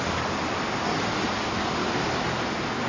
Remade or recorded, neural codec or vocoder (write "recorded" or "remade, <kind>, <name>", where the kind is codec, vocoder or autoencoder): recorded